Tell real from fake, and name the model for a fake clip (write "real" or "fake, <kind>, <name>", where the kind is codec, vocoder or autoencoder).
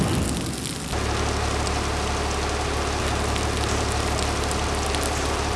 real